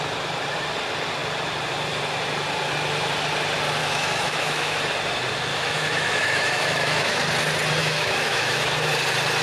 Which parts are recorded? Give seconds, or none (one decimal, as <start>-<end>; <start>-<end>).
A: 0.0-3.8; 4.8-5.5; 7.2-7.8; 8.9-9.4